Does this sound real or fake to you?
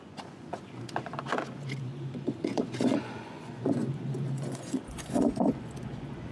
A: fake